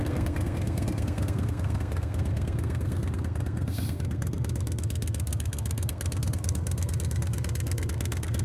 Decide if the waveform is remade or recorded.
remade